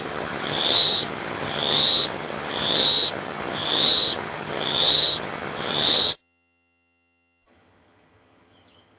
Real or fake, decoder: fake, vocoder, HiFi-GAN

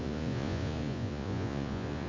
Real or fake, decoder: fake, vocoder, Vocos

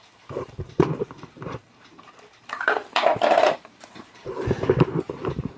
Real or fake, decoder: fake, vocoder, BigVGAN v2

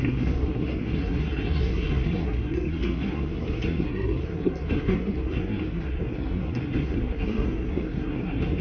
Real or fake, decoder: fake, codec, SNAC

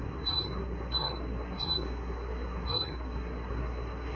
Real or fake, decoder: fake, codec, SNAC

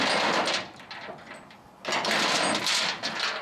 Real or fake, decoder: real